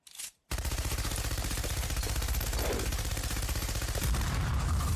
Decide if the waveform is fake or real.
fake